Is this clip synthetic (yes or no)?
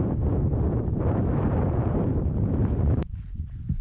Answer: yes